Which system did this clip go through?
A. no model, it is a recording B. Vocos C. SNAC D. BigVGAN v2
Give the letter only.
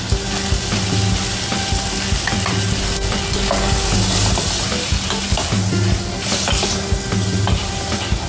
A